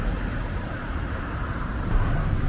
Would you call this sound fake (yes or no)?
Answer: yes